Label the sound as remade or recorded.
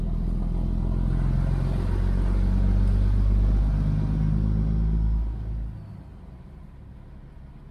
recorded